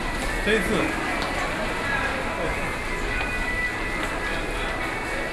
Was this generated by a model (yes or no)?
no